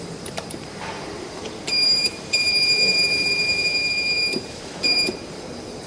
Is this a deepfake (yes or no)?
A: yes